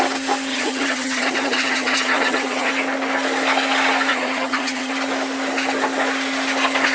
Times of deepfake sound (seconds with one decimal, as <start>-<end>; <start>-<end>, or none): 0.5-2.7; 4.1-4.9